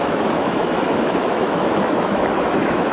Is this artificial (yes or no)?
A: yes